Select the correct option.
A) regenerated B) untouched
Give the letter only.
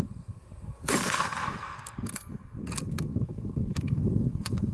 A